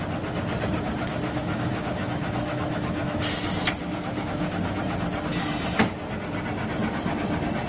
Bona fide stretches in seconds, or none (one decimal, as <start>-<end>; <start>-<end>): 0.0-1.1; 3.2-3.8; 4.8-7.7